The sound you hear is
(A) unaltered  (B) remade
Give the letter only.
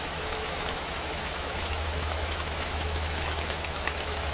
B